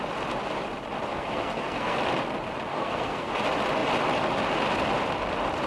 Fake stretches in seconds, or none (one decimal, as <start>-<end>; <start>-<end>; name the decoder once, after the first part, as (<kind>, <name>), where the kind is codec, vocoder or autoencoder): 1.1-2.0 (codec, SNAC); 2.7-3.3